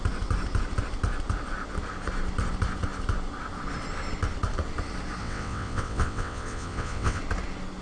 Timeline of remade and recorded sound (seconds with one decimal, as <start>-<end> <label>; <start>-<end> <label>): 0.0-5.2 recorded; 5.2-7.2 remade; 7.2-7.8 recorded